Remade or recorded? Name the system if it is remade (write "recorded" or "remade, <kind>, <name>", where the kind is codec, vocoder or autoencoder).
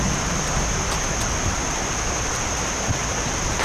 recorded